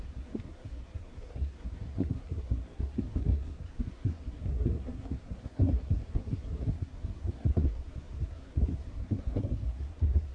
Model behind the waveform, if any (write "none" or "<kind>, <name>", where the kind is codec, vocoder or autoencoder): codec, SNAC